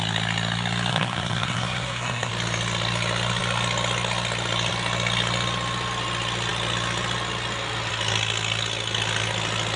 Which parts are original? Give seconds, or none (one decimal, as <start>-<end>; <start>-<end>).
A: 0.0-0.9; 2.3-9.8